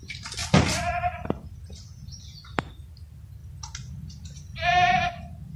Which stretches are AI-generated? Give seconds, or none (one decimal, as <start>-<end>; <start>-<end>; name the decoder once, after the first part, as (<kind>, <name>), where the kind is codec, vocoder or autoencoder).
none